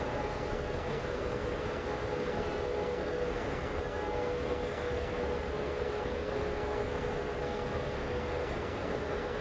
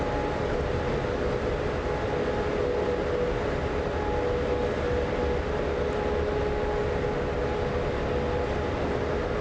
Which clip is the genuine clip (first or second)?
second